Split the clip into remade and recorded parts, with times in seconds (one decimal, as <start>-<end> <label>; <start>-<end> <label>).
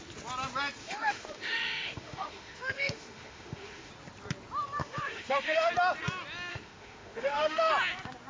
0.0-0.8 recorded; 0.8-3.9 remade; 3.9-4.8 recorded; 4.8-5.7 remade; 5.7-6.5 recorded; 6.5-7.7 remade; 7.7-8.3 recorded